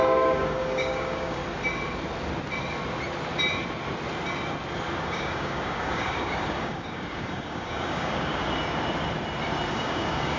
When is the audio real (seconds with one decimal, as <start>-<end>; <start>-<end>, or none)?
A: 1.4-5.0; 8.4-9.7